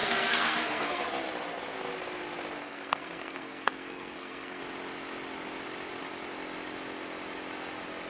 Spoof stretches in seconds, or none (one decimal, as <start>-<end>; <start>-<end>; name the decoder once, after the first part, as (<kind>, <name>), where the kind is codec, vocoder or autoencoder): 0.0-1.0 (codec, SNAC); 2.6-4.6